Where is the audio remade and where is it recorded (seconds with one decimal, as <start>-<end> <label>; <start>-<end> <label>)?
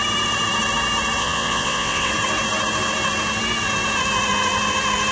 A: 0.0-1.2 recorded; 1.2-2.1 remade; 2.1-5.1 recorded